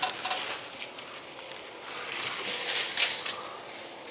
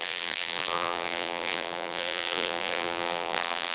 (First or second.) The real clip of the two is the first